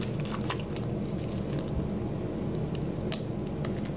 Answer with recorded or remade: recorded